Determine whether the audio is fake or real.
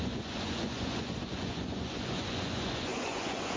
fake